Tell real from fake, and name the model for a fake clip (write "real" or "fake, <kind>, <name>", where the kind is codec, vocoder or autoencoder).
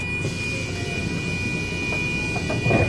real